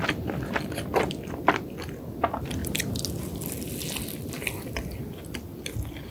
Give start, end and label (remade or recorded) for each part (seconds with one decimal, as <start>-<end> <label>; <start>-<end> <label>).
0.0-6.1 recorded